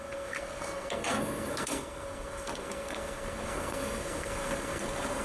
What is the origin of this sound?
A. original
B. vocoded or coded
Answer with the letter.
B